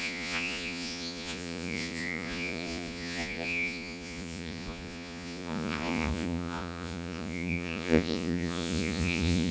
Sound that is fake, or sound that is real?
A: fake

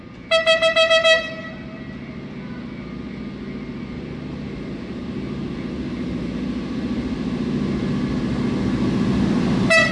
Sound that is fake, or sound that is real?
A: real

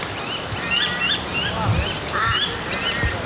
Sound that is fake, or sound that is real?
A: real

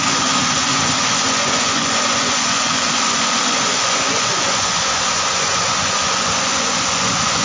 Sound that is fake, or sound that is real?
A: fake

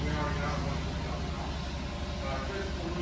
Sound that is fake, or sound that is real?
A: real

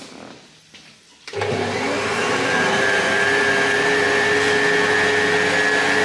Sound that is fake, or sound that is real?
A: real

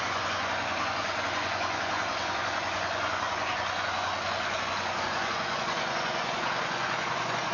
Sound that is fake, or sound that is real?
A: fake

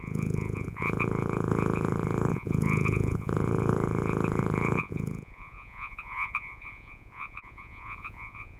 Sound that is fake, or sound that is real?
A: fake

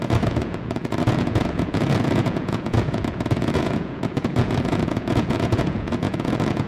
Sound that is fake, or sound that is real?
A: fake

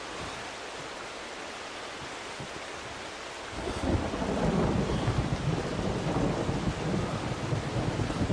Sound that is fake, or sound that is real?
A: real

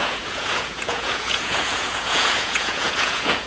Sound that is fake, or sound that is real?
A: fake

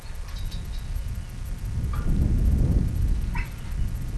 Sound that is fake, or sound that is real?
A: real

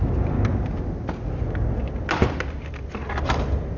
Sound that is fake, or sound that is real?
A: real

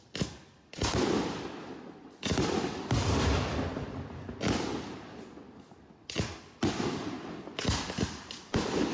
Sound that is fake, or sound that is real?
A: real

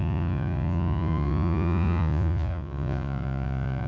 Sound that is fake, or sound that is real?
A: fake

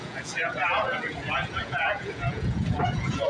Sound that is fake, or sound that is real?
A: fake